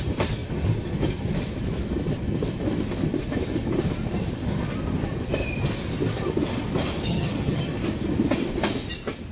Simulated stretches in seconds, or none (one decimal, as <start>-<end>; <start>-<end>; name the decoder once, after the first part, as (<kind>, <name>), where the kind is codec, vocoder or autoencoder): 7.1-7.7 (vocoder, HiFi-GAN)